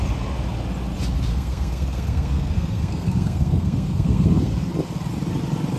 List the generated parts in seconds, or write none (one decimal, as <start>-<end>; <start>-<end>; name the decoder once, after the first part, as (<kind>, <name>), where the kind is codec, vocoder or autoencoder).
1.3-4.7 (codec, SNAC)